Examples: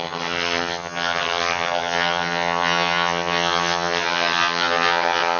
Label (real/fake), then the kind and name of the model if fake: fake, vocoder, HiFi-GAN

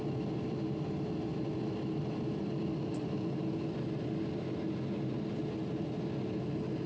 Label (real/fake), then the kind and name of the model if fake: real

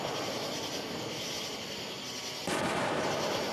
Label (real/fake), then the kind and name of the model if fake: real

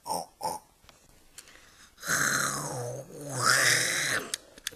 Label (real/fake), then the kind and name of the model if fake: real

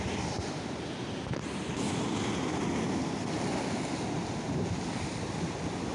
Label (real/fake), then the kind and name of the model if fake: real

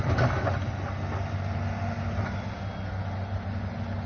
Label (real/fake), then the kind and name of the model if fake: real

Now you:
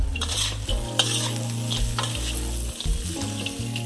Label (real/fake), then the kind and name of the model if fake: real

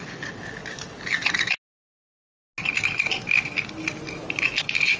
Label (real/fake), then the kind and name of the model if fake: real